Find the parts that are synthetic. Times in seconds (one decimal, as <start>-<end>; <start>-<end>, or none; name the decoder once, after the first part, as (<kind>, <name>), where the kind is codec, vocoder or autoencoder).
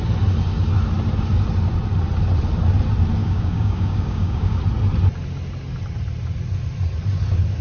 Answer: 3.2-4.6 (codec, DAC)